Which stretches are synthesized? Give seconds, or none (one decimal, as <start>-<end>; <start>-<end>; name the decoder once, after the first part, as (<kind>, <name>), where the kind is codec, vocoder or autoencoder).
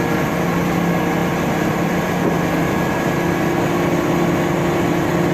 1.2-2.9 (vocoder, BigVGAN v2)